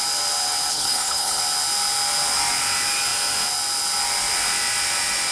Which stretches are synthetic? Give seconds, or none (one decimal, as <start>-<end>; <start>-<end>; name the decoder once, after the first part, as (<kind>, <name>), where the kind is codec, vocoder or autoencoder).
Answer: 0.7-1.4 (codec, HILCodec)